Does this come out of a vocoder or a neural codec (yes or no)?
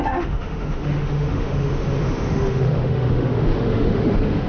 yes